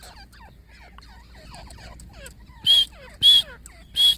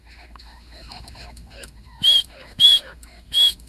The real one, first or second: first